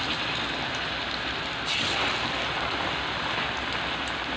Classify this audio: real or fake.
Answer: real